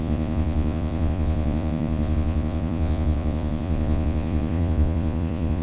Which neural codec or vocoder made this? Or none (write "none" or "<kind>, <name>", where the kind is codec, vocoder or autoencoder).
vocoder, Vocos